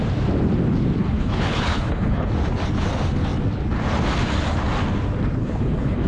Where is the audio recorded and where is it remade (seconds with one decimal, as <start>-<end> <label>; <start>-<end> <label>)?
0.0-1.0 recorded; 1.0-2.3 remade; 2.3-5.4 recorded; 5.4-6.1 remade